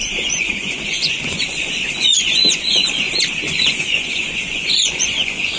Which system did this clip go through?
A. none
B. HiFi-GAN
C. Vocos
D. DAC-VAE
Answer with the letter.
C